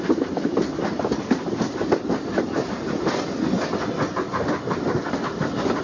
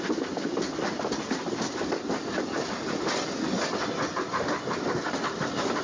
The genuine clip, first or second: second